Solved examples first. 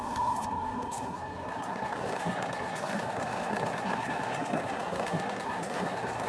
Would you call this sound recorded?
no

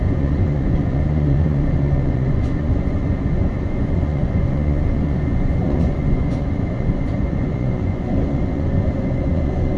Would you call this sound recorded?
no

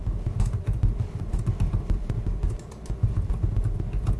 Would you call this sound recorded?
yes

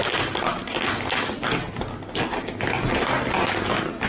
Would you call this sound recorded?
yes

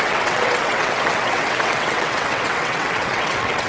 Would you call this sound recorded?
no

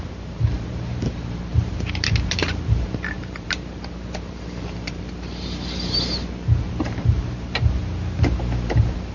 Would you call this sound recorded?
no